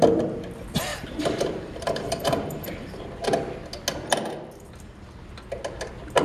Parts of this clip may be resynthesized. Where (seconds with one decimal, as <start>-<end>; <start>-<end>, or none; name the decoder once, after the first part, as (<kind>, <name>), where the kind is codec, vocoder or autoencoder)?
0.9-3.0 (vocoder, BigVGAN v2)